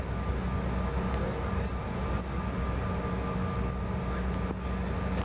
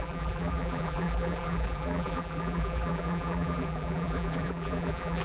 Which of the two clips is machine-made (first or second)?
second